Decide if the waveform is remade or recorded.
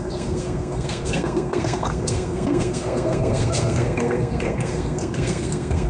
remade